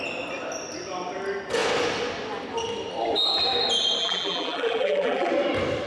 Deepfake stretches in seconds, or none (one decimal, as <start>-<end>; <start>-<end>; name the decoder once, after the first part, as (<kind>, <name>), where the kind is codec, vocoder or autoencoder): 4.0-5.3 (vocoder, BigVGAN v2)